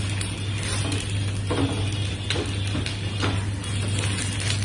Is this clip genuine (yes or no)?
yes